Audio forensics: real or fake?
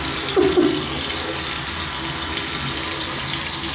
real